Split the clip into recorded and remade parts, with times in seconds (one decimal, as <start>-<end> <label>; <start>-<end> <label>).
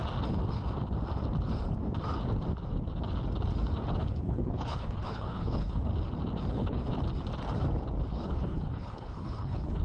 0.0-4.0 recorded; 4.0-5.9 remade; 5.9-6.5 recorded; 6.5-6.9 remade; 6.9-8.1 recorded; 8.1-9.8 remade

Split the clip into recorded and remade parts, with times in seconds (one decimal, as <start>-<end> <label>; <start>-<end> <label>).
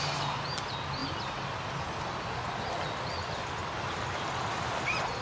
0.0-5.2 recorded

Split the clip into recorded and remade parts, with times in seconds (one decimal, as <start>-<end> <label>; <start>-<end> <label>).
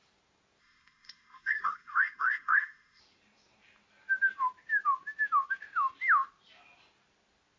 0.0-0.6 recorded; 0.6-3.0 remade; 3.0-7.6 recorded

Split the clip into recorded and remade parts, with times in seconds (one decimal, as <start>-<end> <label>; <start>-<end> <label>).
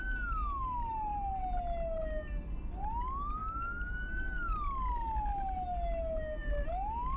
0.0-7.2 recorded